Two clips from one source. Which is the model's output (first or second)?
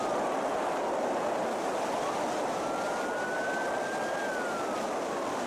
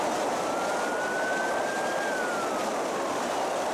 second